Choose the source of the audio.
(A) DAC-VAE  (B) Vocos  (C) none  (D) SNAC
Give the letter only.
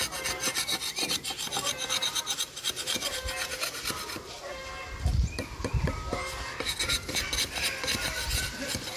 C